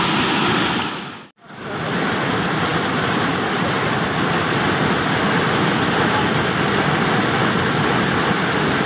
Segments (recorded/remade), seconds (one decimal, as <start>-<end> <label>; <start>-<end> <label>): 0.0-8.9 recorded